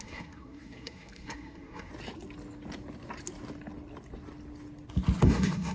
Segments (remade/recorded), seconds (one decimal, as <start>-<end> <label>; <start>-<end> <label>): 0.0-1.9 remade; 1.9-5.2 recorded; 5.2-5.7 remade